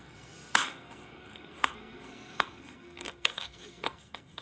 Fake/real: fake